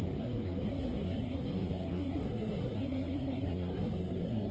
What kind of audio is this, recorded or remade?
remade